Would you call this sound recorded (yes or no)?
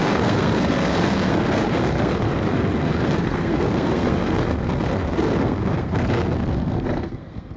no